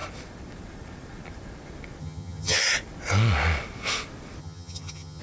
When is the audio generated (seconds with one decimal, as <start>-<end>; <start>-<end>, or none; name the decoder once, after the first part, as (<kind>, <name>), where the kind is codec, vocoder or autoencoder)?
2.0-2.6 (vocoder, HiFi-GAN); 4.4-5.2